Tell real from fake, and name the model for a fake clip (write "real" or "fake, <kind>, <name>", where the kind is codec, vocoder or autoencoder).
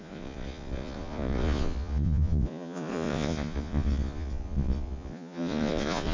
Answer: fake, vocoder, Vocos